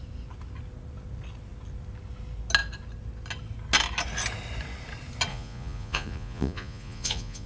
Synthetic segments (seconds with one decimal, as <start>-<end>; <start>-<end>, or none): 5.3-7.5